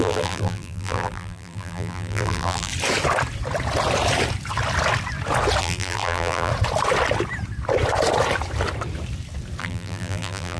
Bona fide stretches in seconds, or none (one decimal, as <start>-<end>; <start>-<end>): 2.7-5.6; 6.5-9.6